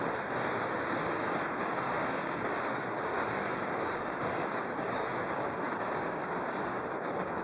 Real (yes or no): no